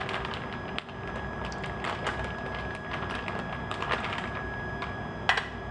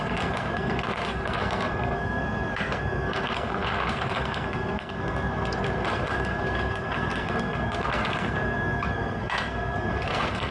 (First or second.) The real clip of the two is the first